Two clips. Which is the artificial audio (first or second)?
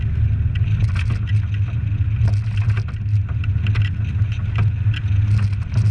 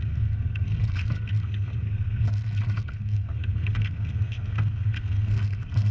second